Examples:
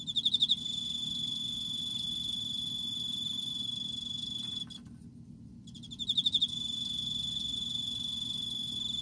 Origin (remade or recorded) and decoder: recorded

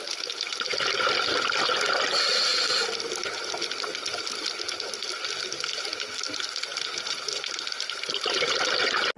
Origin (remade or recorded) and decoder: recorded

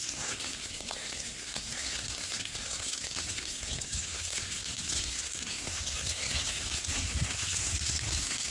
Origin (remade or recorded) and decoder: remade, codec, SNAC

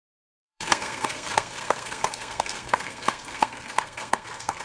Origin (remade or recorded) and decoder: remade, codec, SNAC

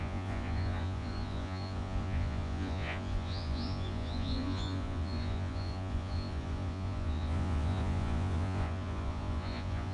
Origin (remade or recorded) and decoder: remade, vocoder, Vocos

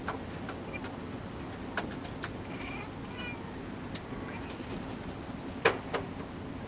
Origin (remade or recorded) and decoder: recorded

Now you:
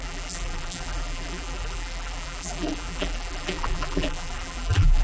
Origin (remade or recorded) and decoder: remade, vocoder, BigVGAN v2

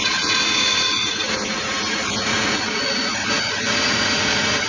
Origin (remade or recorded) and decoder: remade, vocoder, Vocos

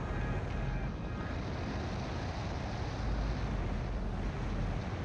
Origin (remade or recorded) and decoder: recorded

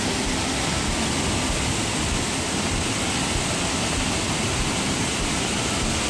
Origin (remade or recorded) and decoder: recorded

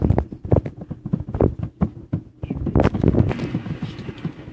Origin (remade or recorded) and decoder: recorded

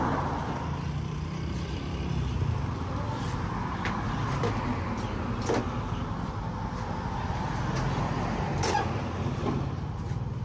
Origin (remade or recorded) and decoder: recorded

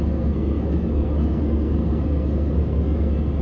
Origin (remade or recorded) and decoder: remade, codec, SNAC